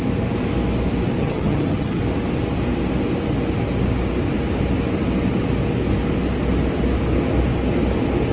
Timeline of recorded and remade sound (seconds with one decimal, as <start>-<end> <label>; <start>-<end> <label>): 0.0-1.2 recorded; 1.2-2.0 remade; 2.0-8.3 recorded